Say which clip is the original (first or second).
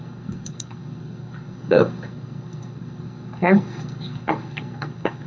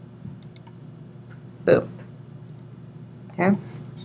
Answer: second